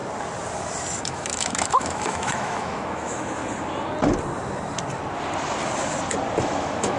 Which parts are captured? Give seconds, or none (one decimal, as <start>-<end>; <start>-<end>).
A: 0.0-1.0; 3.4-6.4